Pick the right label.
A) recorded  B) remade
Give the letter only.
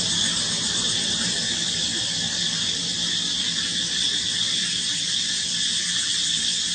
A